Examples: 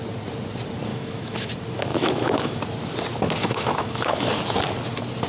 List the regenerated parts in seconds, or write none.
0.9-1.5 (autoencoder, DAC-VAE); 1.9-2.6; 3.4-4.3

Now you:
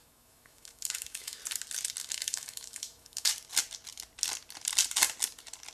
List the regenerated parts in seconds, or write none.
0.0-1.4 (autoencoder, DAC-VAE); 2.0-3.3

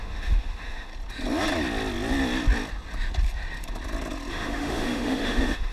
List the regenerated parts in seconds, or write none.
0.0-0.9 (autoencoder, DAC-VAE); 4.3-5.7

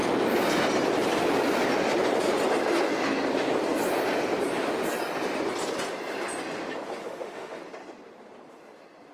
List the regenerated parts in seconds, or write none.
7.0-7.6 (autoencoder, DAC-VAE)

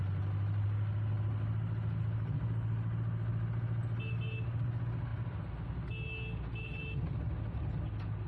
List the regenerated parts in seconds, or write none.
none

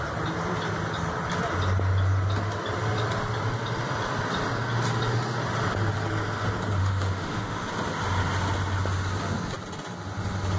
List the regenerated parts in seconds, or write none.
6.8-7.7 (autoencoder, DAC-VAE)